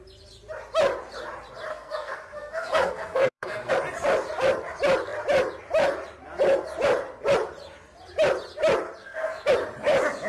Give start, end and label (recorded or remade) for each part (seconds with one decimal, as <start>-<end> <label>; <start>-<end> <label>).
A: 0.0-1.7 recorded; 1.7-3.7 remade; 3.7-9.0 recorded; 9.0-9.5 remade; 9.5-10.3 recorded